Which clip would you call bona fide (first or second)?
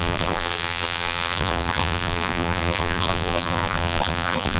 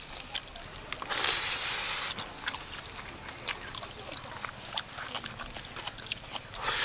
second